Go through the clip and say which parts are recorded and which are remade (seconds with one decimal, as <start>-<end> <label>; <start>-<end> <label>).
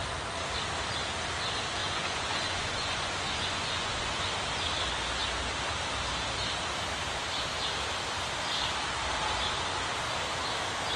0.0-1.8 recorded; 1.8-4.3 remade; 4.3-11.0 recorded